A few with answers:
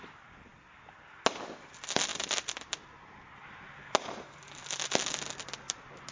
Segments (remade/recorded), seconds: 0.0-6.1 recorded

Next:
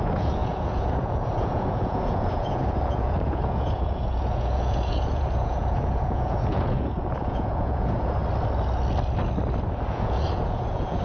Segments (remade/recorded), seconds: 0.0-8.2 remade; 8.2-9.9 recorded; 9.9-11.0 remade

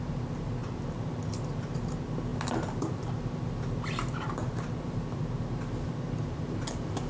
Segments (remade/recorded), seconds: 0.0-7.1 recorded

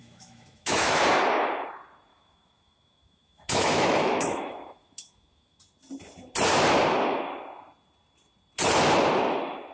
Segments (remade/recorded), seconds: 0.0-1.0 remade; 1.0-2.1 recorded; 2.1-5.6 remade; 5.6-9.7 recorded

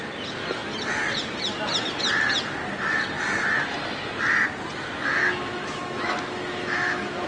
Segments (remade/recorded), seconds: 0.0-5.2 recorded; 5.2-7.3 remade

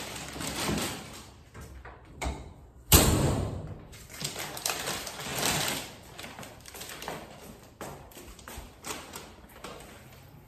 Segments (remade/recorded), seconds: 0.0-10.5 remade